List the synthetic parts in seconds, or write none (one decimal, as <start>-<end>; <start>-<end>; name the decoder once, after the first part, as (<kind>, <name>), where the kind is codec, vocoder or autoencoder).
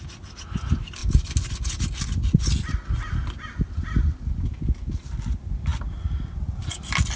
none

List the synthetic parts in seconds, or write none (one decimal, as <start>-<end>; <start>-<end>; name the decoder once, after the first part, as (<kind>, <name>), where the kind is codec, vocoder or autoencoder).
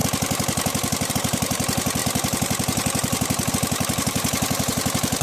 1.1-5.2 (vocoder, BigVGAN v2)